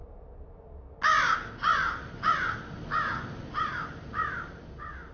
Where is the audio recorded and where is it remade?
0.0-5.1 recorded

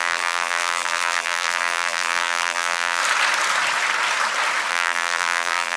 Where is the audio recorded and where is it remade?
0.0-3.0 remade; 3.0-4.7 recorded; 4.7-5.8 remade